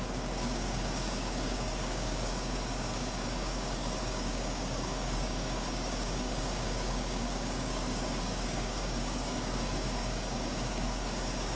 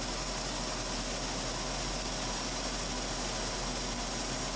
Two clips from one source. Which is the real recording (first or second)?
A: second